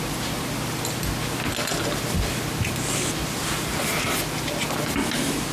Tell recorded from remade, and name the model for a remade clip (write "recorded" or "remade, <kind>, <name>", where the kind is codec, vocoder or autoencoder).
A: recorded